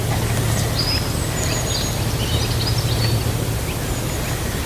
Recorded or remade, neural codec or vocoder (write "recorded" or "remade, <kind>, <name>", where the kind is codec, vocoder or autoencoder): recorded